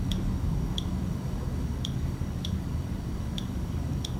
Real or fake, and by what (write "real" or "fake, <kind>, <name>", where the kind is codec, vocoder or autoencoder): fake, codec, DAC